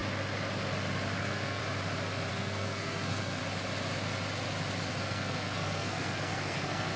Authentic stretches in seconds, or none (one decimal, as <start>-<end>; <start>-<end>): 0.0-1.2; 1.6-2.3; 3.4-4.9